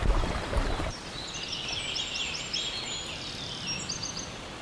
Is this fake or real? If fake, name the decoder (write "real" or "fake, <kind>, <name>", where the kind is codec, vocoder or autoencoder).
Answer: real